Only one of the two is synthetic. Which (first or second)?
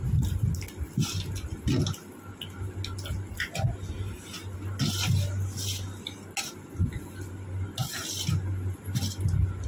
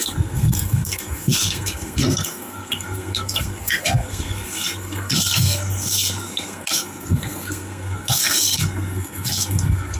second